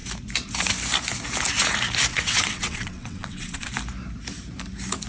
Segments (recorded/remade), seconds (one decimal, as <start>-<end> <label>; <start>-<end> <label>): 0.0-2.1 recorded; 2.1-3.7 remade; 3.7-5.1 recorded